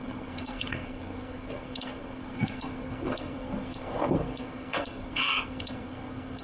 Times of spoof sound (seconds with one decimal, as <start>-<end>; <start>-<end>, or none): 0.0-6.4